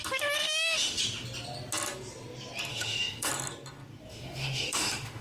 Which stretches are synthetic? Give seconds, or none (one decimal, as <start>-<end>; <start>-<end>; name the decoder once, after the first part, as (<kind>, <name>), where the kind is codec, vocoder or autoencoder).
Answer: 0.4-1.0 (autoencoder, DAC-VAE); 2.7-3.3; 4.1-5.2